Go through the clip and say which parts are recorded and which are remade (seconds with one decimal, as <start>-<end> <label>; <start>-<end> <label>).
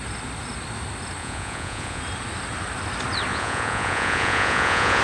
0.0-1.2 recorded; 1.2-2.0 remade; 2.0-3.3 recorded; 3.3-5.0 remade